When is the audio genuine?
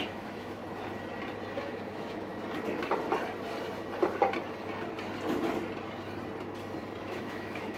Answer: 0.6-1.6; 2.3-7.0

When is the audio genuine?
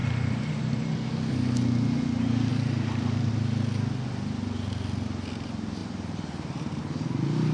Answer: 0.6-2.5; 3.3-5.8; 6.8-7.5